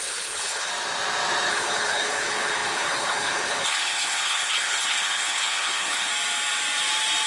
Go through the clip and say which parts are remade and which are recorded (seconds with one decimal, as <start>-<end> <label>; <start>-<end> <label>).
0.0-0.7 remade; 0.7-1.5 recorded; 1.5-6.1 remade; 6.1-7.3 recorded

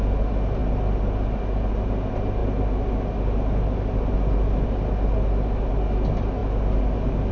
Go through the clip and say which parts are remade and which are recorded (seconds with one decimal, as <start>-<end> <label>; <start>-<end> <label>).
0.0-7.3 recorded

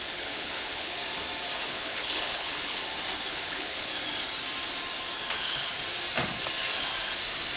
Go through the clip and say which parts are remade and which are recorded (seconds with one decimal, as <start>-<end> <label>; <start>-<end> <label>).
0.0-1.0 remade; 1.0-1.6 recorded; 1.6-2.8 remade; 2.8-3.3 recorded; 3.3-3.9 remade; 3.9-5.3 recorded; 5.3-5.7 remade; 5.7-7.6 recorded

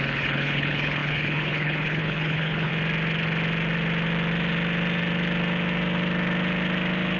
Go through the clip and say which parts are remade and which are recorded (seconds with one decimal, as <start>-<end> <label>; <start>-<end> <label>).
0.0-2.7 remade; 2.7-7.2 recorded

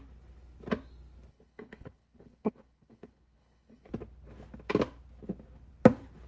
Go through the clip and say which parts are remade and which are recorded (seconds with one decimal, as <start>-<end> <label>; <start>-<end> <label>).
0.0-1.3 recorded; 1.3-3.9 remade; 3.9-6.3 recorded